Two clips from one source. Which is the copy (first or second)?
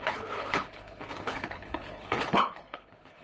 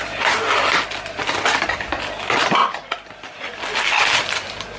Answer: first